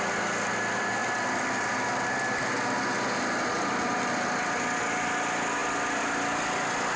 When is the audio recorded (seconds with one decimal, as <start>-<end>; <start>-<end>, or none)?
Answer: 0.0-7.0